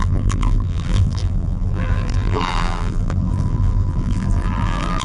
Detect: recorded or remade remade